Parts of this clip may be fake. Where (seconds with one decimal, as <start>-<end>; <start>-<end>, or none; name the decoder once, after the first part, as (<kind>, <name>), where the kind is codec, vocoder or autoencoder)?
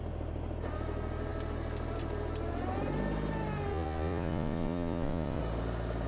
3.7-5.4 (vocoder, Vocos)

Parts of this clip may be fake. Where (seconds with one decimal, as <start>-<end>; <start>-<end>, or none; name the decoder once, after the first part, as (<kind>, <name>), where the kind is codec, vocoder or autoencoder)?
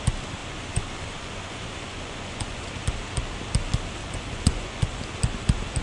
0.4-2.7 (vocoder, Vocos); 4.0-5.0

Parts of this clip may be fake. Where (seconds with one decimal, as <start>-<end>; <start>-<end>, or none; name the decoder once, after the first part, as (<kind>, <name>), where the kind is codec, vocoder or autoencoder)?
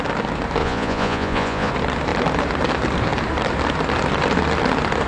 0.6-1.7 (vocoder, Vocos)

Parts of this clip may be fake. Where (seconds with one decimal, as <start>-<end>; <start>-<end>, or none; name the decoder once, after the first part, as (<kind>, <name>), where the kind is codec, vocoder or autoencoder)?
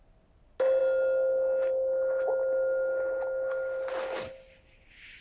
none